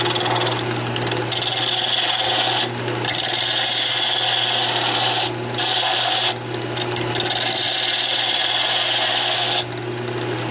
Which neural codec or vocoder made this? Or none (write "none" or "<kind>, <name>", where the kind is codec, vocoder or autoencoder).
none